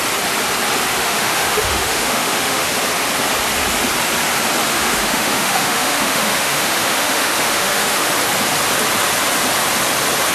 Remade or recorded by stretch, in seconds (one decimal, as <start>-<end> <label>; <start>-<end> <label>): 0.0-1.0 recorded; 1.0-2.7 remade; 2.7-4.7 recorded; 4.7-8.1 remade; 8.1-10.3 recorded